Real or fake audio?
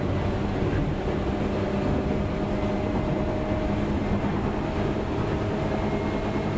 real